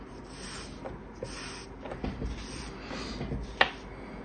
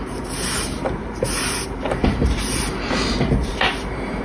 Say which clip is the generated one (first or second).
second